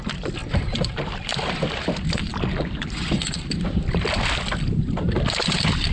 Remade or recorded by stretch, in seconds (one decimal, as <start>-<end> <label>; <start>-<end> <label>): 0.0-0.4 remade; 0.4-1.3 recorded; 1.3-5.9 remade